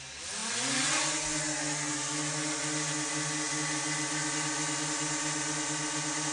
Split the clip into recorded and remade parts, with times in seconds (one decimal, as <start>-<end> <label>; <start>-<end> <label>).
0.0-6.3 recorded